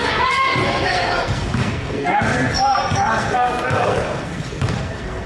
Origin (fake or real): fake